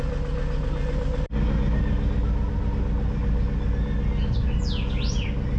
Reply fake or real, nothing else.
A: real